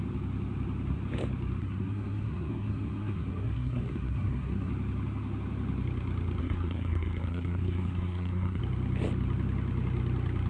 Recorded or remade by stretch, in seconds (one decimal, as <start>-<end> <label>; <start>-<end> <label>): 0.0-1.6 recorded; 1.6-4.7 remade; 4.7-6.4 recorded; 6.4-8.6 remade; 8.6-10.5 recorded